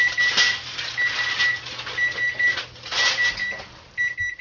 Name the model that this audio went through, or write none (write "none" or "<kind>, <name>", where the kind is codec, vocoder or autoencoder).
none